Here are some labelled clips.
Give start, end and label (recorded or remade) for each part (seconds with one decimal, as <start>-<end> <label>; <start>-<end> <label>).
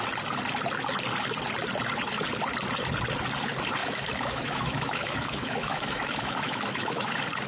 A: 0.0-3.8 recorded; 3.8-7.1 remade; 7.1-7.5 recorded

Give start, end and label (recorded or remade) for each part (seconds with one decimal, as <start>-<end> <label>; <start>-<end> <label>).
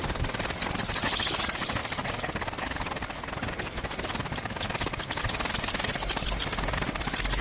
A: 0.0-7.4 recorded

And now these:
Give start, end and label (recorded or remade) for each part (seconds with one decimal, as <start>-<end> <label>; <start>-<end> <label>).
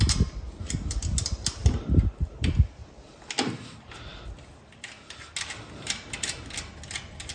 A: 0.0-7.3 recorded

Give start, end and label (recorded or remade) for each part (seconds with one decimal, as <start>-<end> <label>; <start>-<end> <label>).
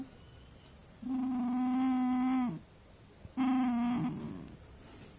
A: 0.0-5.2 recorded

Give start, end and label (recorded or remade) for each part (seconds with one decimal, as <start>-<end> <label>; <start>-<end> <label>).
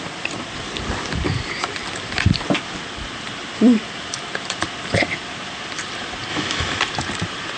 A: 0.0-6.3 recorded; 6.3-6.8 remade; 6.8-7.6 recorded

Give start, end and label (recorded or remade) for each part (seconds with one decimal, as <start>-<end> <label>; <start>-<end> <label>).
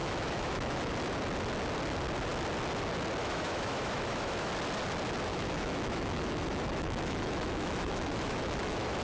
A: 0.0-0.9 remade; 0.9-3.2 recorded; 3.2-4.5 remade; 4.5-5.3 recorded; 5.3-9.0 remade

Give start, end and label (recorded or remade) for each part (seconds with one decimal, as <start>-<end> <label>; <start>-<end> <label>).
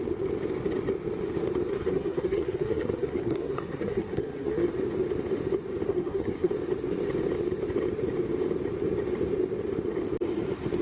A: 0.0-1.7 recorded; 1.7-4.7 remade; 4.7-5.9 recorded; 5.9-6.5 remade; 6.5-10.8 recorded